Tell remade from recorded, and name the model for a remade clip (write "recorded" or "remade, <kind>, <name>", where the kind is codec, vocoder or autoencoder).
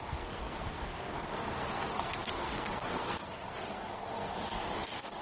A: remade, codec, SNAC